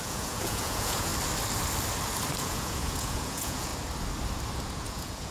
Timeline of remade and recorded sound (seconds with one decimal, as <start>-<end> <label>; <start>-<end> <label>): 0.0-1.1 remade; 1.1-2.4 recorded; 2.4-3.7 remade; 3.7-4.7 recorded; 4.7-5.3 remade